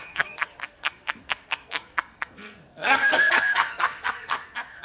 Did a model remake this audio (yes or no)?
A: yes